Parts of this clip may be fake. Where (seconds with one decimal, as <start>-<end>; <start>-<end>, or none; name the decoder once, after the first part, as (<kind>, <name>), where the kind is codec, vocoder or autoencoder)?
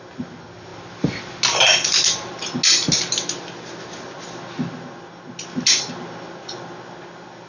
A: none